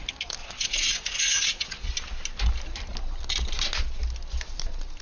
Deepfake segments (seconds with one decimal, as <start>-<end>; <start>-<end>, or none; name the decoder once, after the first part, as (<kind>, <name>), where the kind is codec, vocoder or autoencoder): 0.4-1.9 (vocoder, Vocos)